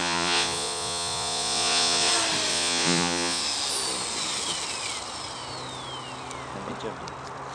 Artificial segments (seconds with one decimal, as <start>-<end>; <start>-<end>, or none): 0.0-2.1; 2.5-3.4